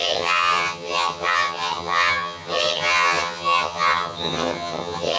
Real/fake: fake